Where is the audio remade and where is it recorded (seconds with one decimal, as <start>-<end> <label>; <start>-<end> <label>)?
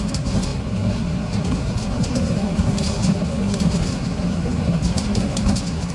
0.0-5.9 remade